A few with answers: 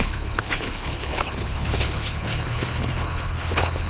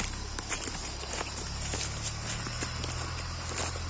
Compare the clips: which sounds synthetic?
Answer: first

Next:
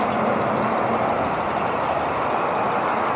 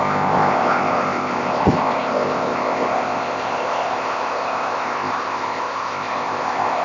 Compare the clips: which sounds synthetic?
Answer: second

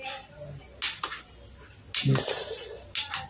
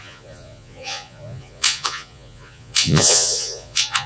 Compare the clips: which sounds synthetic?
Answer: second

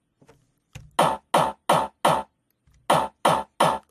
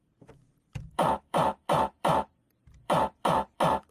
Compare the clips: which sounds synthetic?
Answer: second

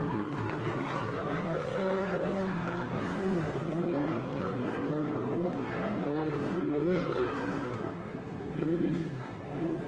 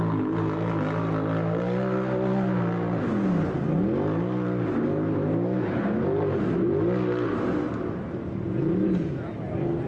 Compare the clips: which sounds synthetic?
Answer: first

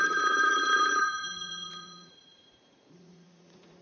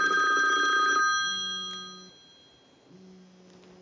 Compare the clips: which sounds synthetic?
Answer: first